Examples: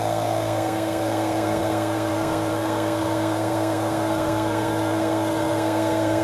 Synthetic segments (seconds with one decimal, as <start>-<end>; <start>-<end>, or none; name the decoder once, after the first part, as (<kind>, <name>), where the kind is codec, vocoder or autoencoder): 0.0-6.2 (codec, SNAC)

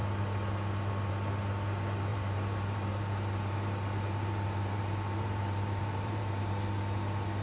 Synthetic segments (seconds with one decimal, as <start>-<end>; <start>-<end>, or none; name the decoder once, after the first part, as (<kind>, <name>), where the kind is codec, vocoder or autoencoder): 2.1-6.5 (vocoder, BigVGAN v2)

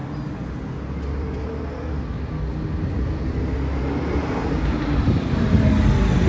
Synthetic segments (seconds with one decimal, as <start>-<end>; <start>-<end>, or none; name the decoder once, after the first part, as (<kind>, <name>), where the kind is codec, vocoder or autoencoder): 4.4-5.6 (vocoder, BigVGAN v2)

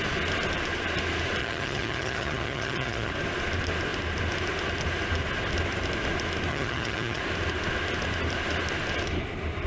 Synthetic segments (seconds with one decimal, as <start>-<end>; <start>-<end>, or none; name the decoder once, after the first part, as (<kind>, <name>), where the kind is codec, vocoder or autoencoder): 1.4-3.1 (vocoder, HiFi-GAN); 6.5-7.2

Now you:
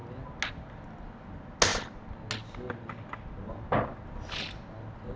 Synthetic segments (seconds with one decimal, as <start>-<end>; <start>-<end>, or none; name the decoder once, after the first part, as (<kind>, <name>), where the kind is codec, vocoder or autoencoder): none

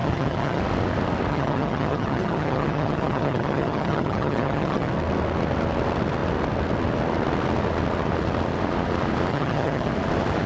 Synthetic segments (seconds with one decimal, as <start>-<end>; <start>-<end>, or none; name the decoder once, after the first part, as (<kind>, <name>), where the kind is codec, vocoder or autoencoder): 0.0-0.6 (vocoder, HiFi-GAN); 1.3-4.9; 9.3-9.9

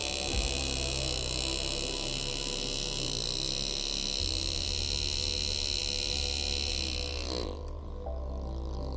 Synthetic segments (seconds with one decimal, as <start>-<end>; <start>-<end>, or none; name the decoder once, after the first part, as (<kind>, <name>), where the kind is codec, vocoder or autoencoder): none